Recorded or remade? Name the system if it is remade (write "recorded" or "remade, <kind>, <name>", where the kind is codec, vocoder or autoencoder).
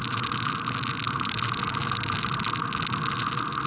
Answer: recorded